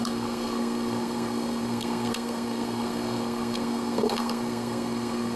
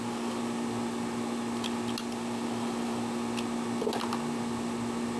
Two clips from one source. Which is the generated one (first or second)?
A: first